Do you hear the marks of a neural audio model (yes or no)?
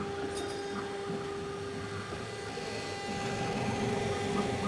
no